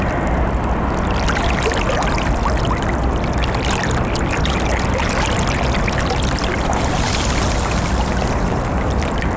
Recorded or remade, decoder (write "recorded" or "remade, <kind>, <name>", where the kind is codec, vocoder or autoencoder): recorded